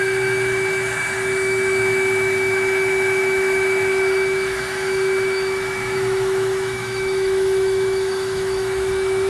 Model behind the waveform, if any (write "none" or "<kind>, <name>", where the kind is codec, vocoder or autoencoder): autoencoder, DAC-VAE